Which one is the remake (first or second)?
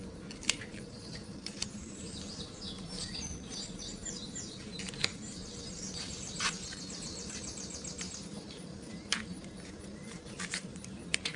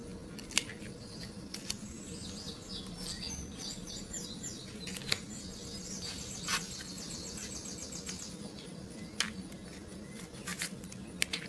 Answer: first